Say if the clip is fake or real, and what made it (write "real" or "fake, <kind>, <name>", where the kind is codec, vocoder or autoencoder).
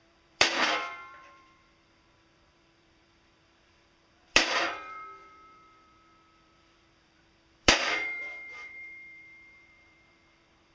fake, vocoder, BigVGAN v2